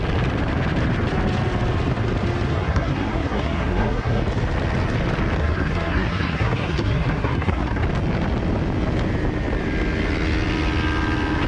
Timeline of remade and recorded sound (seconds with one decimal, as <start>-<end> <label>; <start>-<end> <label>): 0.0-2.5 recorded; 2.5-4.2 remade; 4.2-5.4 recorded; 5.4-7.8 remade; 7.8-11.5 recorded